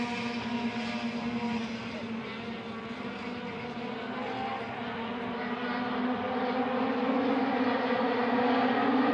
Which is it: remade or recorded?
recorded